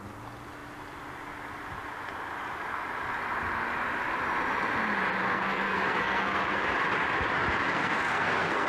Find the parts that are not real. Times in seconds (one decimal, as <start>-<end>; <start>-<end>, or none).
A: 5.2-6.6; 7.7-8.7